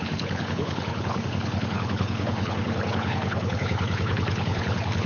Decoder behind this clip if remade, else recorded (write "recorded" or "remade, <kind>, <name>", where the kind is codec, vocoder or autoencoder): remade, codec, HILCodec